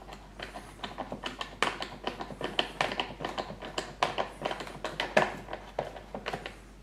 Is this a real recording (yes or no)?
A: yes